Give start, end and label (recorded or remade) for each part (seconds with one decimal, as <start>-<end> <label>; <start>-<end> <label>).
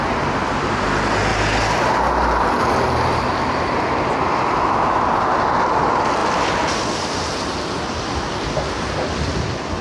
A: 0.0-9.8 recorded